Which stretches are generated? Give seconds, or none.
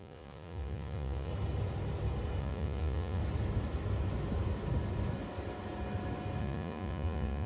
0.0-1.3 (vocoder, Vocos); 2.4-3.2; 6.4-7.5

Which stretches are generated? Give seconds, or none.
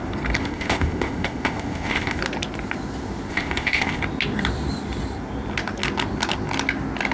0.4-2.2 (codec, ZipCodec); 3.3-4.0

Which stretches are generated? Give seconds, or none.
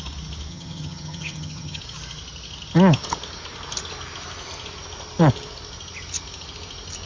0.5-1.8 (vocoder, HiFi-GAN)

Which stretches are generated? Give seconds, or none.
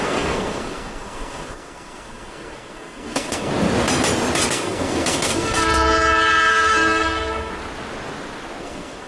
0.0-3.5 (codec, SNAC); 4.5-5.7; 6.5-7.5; 8.6-9.1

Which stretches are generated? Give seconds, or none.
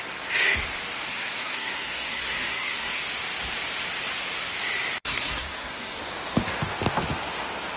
1.1-3.0 (codec, SNAC); 5.0-6.0